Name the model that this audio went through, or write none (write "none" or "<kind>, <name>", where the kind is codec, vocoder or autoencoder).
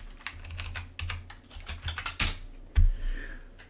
none